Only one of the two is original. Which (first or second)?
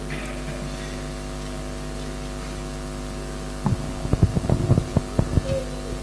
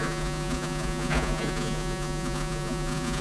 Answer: first